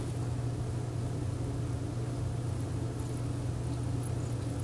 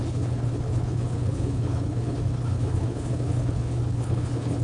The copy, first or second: second